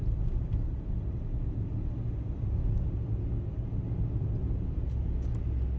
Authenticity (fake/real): real